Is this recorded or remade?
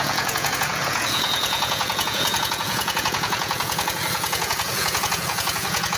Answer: remade